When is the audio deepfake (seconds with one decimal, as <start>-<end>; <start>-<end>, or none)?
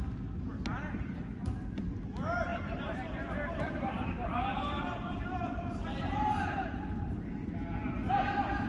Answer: 2.5-7.1